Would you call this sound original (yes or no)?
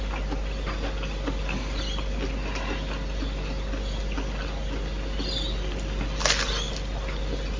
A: yes